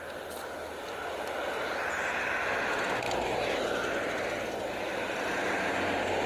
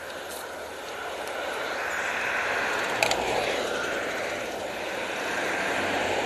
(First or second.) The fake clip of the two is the second